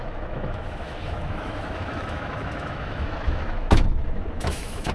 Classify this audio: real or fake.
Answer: fake